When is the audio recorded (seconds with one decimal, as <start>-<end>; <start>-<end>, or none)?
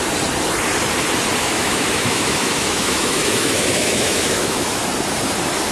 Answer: 0.0-1.4; 4.8-5.7